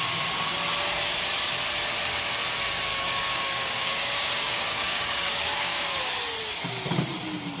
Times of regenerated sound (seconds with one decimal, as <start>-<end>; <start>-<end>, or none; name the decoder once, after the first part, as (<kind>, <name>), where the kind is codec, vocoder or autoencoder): 2.9-6.0 (codec, DAC)